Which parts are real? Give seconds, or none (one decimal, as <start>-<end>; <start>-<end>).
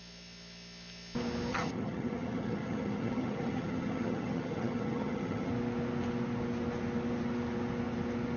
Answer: 0.0-1.5; 5.5-8.4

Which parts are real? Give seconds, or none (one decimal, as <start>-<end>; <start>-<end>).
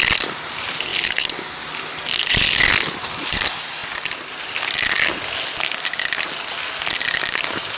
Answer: 0.0-7.8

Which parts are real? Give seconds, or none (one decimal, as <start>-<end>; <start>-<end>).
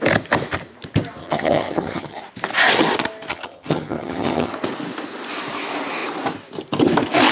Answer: 0.0-1.2; 2.2-3.3; 4.5-7.3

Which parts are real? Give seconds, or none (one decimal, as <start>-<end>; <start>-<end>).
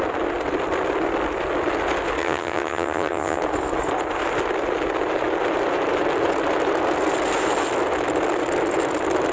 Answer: 0.0-2.2; 3.4-9.3